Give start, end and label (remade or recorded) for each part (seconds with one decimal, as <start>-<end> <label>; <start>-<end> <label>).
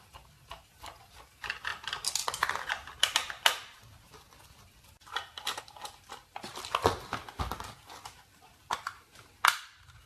0.0-10.1 recorded